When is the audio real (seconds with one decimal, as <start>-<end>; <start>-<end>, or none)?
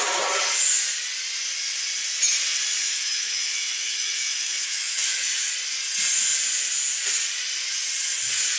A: 0.0-2.8; 5.5-8.6